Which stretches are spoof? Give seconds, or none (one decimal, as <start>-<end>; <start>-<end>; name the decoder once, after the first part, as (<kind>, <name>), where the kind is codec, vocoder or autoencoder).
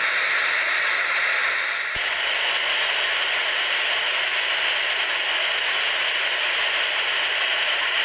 none